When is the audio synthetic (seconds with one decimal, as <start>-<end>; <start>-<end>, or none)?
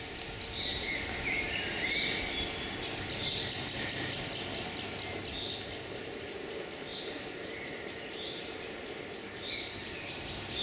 0.7-1.6; 6.9-10.2